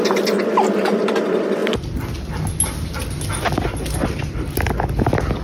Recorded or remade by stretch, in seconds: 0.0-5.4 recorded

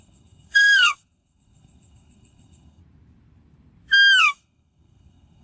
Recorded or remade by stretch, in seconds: 0.0-2.8 remade; 2.8-4.2 recorded; 4.2-5.4 remade